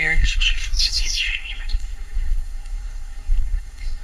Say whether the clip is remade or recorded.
remade